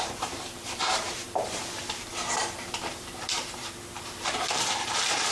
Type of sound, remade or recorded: remade